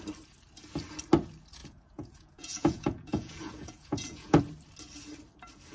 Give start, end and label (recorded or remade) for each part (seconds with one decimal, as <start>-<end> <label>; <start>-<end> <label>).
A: 0.0-1.6 recorded; 1.6-4.4 remade; 4.4-5.7 recorded